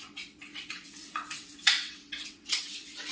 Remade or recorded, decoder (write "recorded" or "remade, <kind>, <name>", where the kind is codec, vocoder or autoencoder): remade, vocoder, WaveNeXt